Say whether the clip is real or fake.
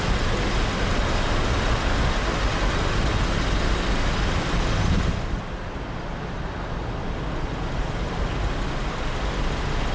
real